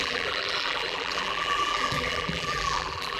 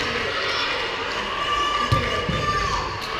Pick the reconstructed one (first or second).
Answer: first